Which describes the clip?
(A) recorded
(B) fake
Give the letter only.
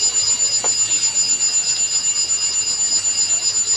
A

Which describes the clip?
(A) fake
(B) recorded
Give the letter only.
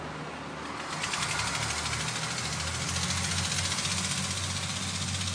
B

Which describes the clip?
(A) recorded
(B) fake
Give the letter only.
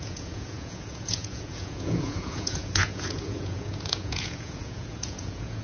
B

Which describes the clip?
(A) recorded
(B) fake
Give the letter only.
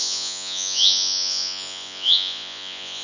B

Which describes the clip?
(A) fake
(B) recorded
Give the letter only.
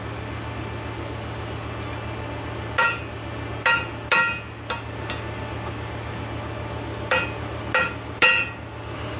B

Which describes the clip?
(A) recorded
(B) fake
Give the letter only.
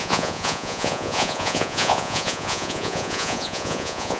B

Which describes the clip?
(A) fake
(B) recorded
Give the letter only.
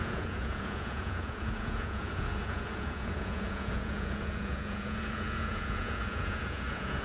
A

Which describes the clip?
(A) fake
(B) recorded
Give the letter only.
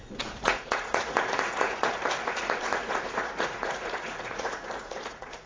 A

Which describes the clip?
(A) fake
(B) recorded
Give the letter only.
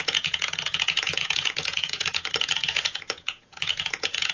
A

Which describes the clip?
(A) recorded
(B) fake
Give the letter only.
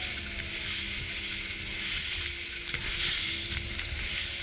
A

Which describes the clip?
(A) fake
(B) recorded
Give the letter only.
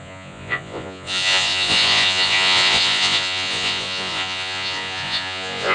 A